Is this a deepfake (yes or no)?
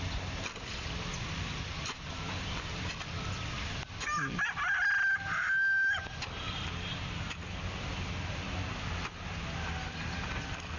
no